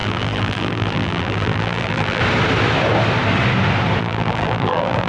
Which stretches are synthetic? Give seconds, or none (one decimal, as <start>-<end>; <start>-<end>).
0.0-2.2; 4.0-5.1